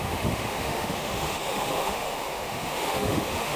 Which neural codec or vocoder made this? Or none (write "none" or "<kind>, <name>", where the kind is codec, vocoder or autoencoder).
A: autoencoder, DAC-VAE